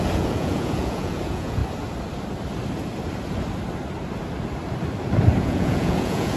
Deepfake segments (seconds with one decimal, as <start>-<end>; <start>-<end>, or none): 0.0-1.6; 5.4-6.4